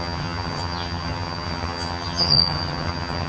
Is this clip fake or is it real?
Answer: fake